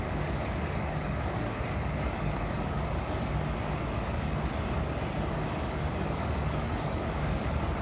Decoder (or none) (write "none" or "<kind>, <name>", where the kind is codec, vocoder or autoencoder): codec, DAC